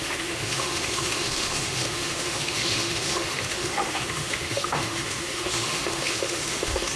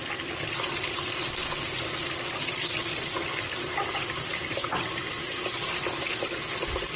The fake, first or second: first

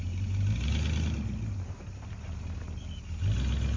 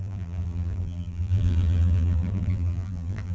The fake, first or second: second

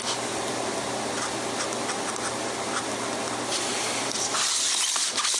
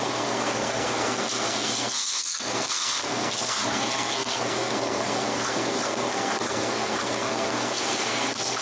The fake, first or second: second